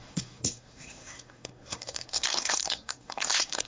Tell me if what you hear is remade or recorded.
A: remade